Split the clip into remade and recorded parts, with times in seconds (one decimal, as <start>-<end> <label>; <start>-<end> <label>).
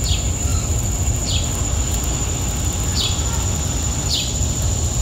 0.0-5.0 recorded